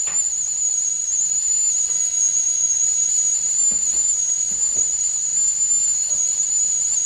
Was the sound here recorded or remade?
recorded